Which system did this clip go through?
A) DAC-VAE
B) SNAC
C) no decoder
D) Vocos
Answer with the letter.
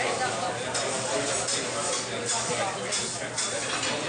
C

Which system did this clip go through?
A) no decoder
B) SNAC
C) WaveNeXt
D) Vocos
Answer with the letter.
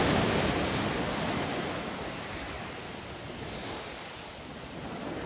A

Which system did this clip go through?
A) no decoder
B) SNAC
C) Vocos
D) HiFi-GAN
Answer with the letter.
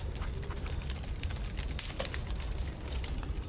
A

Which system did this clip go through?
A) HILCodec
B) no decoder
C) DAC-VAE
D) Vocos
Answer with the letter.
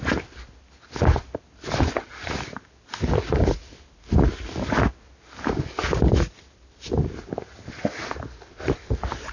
B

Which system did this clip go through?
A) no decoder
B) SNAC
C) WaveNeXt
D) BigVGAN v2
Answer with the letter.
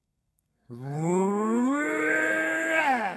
B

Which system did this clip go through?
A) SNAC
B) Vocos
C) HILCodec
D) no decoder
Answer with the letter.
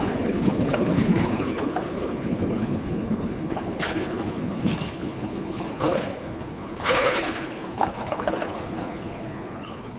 C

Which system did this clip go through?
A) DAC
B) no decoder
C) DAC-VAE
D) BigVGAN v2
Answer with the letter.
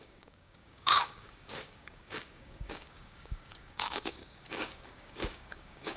A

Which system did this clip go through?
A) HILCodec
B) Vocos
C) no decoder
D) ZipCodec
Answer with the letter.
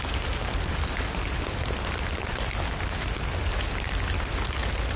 C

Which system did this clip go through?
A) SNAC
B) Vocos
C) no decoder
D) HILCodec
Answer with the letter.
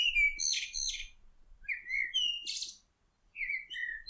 C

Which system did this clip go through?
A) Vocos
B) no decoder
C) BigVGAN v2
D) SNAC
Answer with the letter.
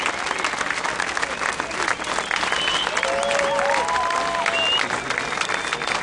B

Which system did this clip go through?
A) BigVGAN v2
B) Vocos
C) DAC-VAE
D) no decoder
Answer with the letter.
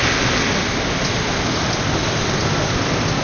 D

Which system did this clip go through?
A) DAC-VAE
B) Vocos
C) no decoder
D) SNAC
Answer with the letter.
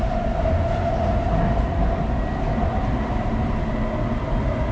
C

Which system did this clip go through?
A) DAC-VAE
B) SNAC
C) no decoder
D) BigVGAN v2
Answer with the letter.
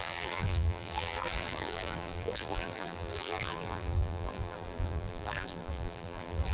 D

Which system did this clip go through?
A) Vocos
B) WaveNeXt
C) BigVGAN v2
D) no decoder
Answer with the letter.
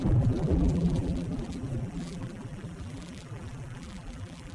C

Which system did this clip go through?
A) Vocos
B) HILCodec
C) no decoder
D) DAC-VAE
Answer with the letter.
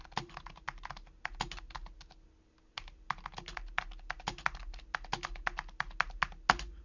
C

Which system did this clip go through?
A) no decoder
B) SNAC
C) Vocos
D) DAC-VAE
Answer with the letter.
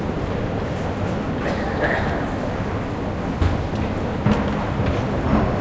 A